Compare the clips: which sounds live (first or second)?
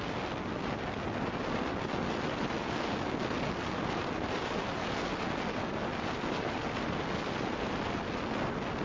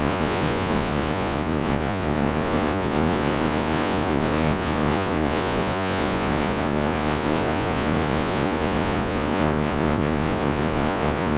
first